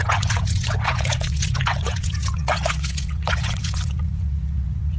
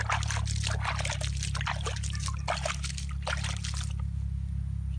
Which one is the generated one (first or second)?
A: first